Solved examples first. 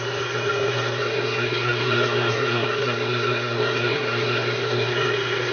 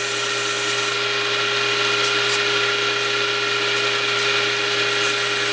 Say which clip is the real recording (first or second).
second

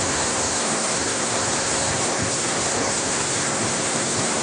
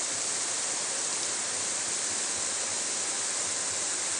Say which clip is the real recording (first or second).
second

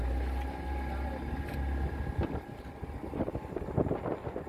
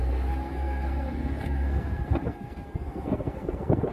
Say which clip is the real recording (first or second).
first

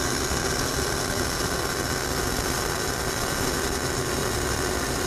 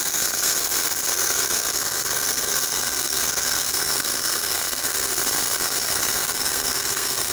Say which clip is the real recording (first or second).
first